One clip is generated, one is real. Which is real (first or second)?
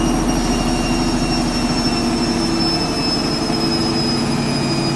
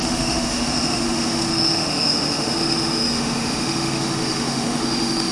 first